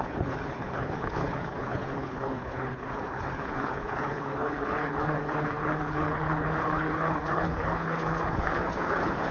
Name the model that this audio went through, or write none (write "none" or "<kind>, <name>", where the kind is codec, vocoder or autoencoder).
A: codec, HILCodec